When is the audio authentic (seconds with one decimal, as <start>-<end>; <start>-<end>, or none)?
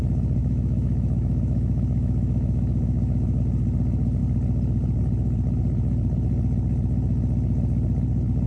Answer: 0.0-0.4; 3.4-8.5